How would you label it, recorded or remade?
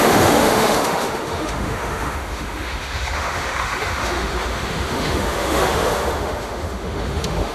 remade